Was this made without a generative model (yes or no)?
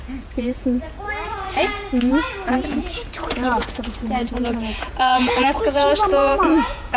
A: no